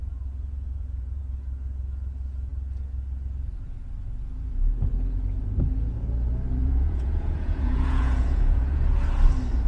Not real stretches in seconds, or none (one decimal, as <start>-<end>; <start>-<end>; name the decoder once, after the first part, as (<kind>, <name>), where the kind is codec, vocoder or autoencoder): 0.0-1.2 (vocoder, Vocos); 6.6-9.0